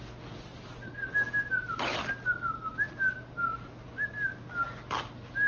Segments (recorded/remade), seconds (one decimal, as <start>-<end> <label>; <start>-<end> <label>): 0.0-5.5 recorded